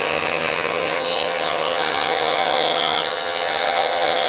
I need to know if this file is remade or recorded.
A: remade